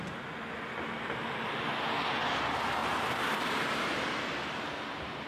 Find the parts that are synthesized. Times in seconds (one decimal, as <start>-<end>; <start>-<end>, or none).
2.8-3.8